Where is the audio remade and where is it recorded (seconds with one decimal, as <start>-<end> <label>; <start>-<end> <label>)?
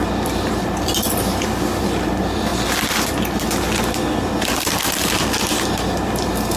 0.0-6.6 recorded